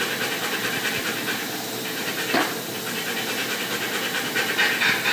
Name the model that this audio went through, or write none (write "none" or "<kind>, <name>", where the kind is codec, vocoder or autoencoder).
none